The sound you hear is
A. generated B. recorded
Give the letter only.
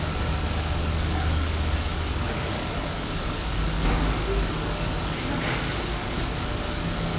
A